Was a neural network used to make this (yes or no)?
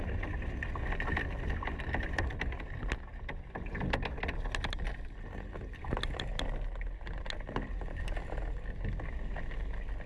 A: no